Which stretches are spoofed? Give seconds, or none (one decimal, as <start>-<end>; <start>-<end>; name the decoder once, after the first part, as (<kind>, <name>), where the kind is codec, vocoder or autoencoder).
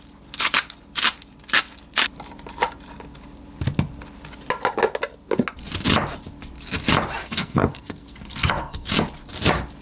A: 7.2-8.9 (codec, SNAC)